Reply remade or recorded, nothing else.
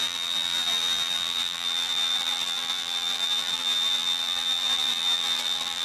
remade